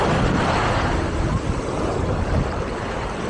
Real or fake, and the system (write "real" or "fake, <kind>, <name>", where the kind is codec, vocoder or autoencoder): real